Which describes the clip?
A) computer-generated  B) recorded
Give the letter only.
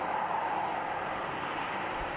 B